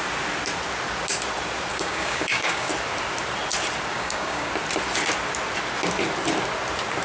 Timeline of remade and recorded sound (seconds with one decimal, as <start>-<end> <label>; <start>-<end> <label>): 0.0-1.7 recorded; 1.7-2.7 remade; 2.7-3.9 recorded; 3.9-4.5 remade; 4.5-7.0 recorded